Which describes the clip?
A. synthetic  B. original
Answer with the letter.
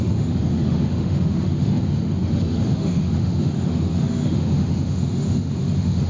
A